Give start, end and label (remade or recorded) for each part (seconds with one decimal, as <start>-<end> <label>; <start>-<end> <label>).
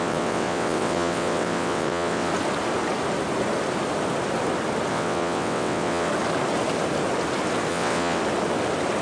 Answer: 0.0-2.3 remade; 2.3-4.9 recorded; 4.9-6.1 remade; 6.1-7.7 recorded; 7.7-8.2 remade; 8.2-9.0 recorded